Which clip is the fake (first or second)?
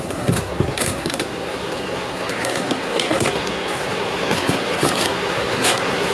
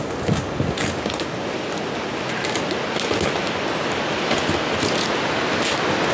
first